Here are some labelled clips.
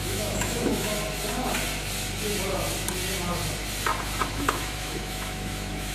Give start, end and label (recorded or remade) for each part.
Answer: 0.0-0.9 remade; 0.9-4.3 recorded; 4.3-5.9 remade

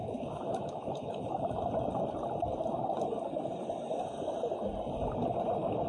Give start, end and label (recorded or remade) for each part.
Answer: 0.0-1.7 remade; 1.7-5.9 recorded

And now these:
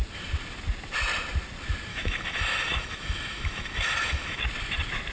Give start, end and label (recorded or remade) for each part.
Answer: 0.0-1.9 recorded; 1.9-4.4 remade; 4.4-5.1 recorded

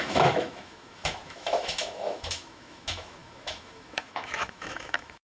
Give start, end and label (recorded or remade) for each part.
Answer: 0.0-5.2 remade

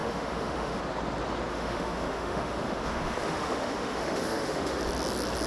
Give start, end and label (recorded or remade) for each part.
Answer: 0.0-0.8 remade; 0.8-1.5 recorded; 1.5-4.8 remade; 4.8-5.5 recorded

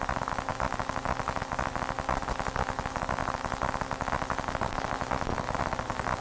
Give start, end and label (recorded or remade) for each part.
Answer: 0.0-6.2 recorded

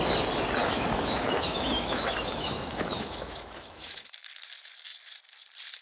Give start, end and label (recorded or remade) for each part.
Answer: 0.0-0.6 recorded; 0.6-4.1 remade; 4.1-5.8 recorded